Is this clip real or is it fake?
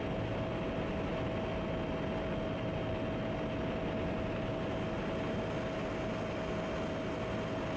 real